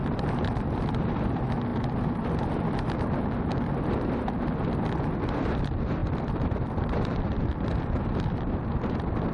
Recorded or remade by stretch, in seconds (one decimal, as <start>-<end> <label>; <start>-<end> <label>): 0.0-1.2 remade; 1.2-1.7 recorded; 1.7-3.0 remade; 3.0-6.0 recorded; 6.0-8.9 remade; 8.9-9.3 recorded